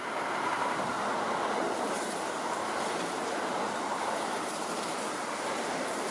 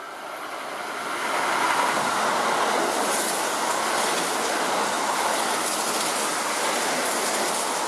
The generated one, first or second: first